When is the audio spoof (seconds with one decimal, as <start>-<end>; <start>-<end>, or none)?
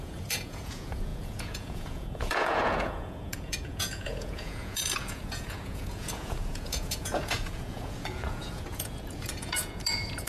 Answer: 0.0-10.3